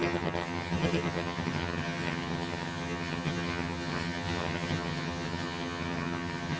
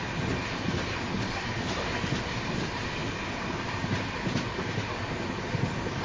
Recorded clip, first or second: second